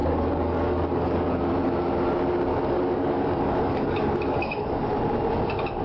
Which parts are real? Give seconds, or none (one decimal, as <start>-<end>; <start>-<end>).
1.4-2.5; 4.9-5.8